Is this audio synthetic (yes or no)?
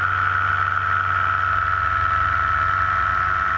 no